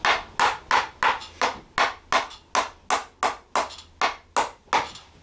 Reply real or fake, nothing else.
real